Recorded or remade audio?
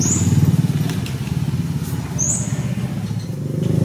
recorded